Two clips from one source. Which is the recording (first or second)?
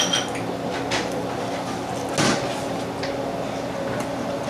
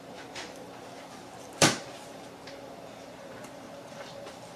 first